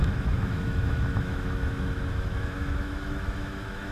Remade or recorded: remade